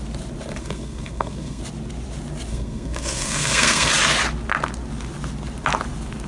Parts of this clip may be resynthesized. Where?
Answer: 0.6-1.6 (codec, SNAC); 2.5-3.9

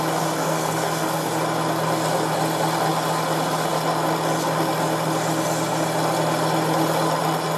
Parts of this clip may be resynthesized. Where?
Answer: 0.4-1.3 (codec, SNAC)